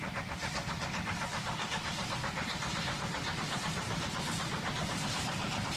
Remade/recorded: remade